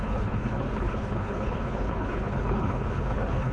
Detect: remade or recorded remade